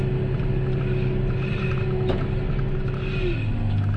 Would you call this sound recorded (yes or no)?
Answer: yes